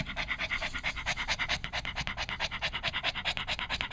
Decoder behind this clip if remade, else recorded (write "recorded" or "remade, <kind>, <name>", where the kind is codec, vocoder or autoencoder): recorded